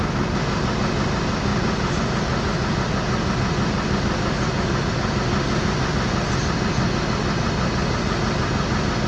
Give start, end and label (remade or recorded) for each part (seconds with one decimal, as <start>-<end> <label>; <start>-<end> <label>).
0.0-9.1 recorded